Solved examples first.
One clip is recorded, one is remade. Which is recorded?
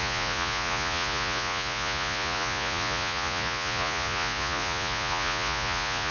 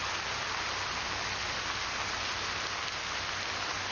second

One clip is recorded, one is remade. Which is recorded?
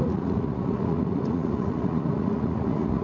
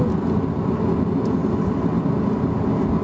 second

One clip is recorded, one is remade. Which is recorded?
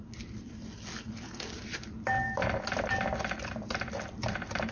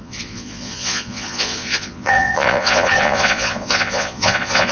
first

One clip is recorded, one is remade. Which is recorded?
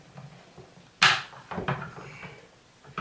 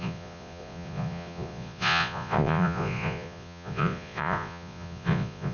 first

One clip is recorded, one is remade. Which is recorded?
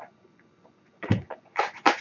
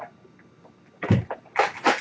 second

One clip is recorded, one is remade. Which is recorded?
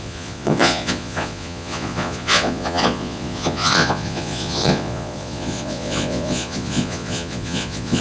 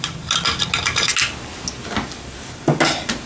second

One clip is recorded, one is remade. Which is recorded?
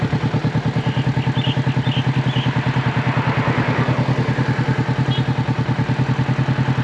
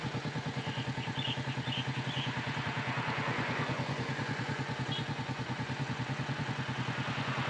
first